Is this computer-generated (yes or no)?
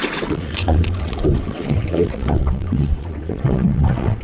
yes